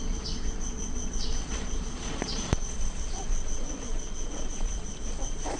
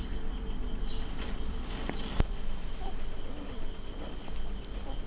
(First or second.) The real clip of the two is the second